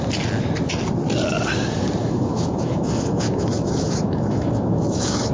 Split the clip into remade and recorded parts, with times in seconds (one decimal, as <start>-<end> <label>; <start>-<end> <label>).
0.0-2.0 recorded; 2.0-5.3 remade